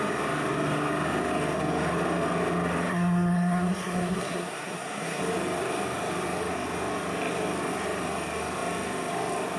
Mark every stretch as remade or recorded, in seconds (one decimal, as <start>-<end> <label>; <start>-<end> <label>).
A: 0.0-2.9 recorded; 2.9-5.2 remade; 5.2-9.6 recorded